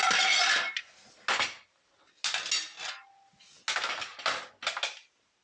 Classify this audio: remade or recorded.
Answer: recorded